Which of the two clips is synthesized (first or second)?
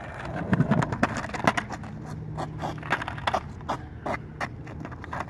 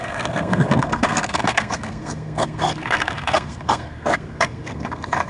second